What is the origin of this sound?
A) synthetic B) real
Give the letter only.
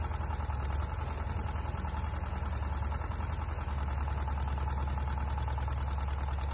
B